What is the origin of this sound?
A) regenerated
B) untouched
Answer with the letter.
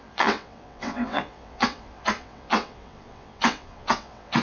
A